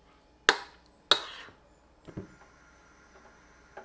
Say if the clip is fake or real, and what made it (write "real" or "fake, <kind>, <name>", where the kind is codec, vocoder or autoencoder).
real